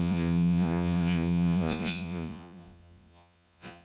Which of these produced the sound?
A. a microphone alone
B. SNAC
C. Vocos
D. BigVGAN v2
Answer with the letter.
C